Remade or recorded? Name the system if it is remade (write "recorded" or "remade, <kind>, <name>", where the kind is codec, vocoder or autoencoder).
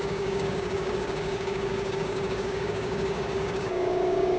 remade, codec, DAC